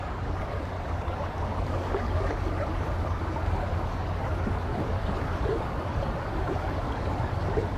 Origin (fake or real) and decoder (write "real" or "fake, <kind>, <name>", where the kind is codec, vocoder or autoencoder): fake, codec, DAC